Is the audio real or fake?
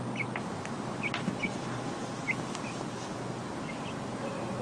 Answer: real